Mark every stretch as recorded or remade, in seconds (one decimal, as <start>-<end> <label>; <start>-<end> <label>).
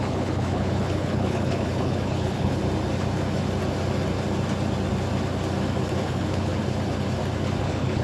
0.0-2.6 remade; 2.6-6.0 recorded; 6.0-6.5 remade; 6.5-7.6 recorded; 7.6-8.0 remade